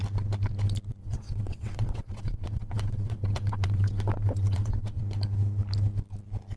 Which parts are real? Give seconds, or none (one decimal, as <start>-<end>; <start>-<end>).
0.0-1.0; 5.0-6.6